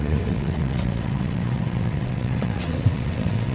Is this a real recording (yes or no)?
no